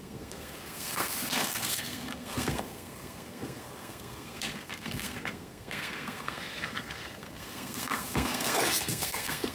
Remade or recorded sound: remade